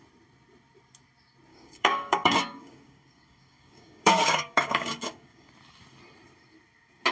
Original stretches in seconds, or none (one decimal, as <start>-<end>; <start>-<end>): 0.0-1.5; 5.5-7.1